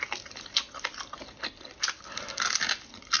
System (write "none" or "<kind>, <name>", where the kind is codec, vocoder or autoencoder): none